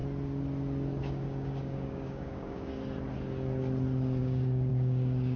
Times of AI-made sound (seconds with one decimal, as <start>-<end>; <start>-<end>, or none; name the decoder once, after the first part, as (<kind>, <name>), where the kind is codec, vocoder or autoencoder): 1.0-2.7 (codec, DAC); 4.2-5.4

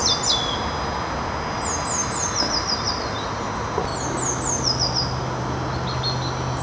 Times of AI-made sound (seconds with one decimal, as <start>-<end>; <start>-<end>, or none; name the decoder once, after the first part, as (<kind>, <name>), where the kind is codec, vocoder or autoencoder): none